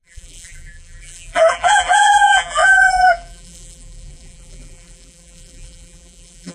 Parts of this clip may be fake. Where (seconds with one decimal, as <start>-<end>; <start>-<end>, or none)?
0.0-6.5